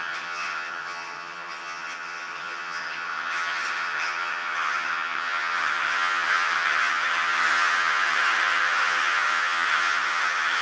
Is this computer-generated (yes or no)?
yes